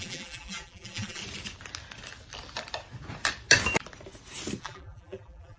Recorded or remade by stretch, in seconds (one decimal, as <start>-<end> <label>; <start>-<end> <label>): 0.0-1.2 remade; 1.2-4.6 recorded; 4.6-5.6 remade